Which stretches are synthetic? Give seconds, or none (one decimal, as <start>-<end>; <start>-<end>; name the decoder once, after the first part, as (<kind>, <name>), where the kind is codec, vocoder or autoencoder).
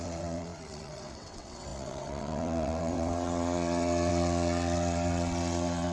0.0-5.9 (vocoder, WaveNeXt)